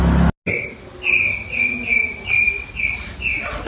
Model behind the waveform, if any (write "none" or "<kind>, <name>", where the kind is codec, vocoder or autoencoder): none